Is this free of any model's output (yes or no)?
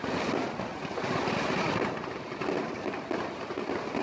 yes